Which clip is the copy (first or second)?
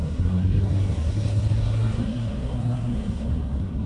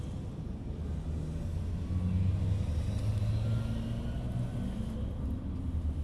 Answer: first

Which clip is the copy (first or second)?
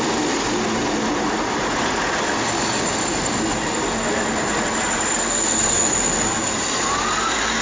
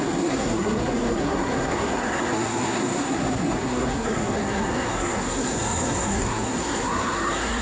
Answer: second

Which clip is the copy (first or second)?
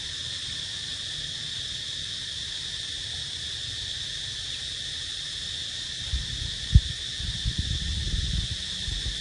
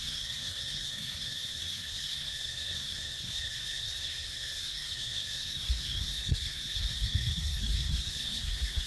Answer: second